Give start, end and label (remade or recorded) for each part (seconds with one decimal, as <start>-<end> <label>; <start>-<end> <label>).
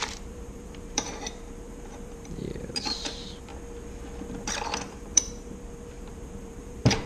0.0-3.5 remade; 3.5-4.5 recorded; 4.5-7.1 remade